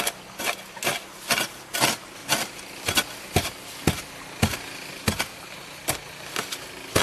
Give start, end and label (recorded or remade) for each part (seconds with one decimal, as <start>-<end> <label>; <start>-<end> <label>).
0.0-7.0 recorded